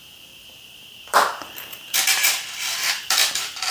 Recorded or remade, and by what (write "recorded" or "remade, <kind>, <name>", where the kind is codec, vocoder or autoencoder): remade, vocoder, BigVGAN v2